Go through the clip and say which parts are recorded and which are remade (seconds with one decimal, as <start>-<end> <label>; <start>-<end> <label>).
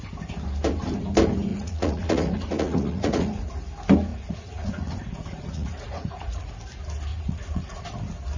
0.0-1.5 recorded; 1.5-3.5 remade; 3.5-4.1 recorded; 4.1-6.5 remade; 6.5-7.1 recorded; 7.1-7.8 remade; 7.8-8.4 recorded